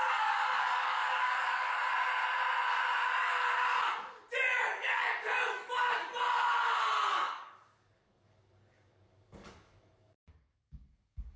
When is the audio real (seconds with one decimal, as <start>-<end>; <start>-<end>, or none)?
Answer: 1.8-4.6; 6.1-7.1